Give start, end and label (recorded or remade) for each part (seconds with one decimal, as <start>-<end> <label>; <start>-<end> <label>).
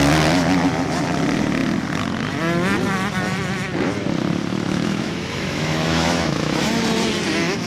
0.0-4.5 recorded; 4.5-6.7 remade; 6.7-7.7 recorded